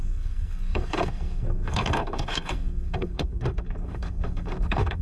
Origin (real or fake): fake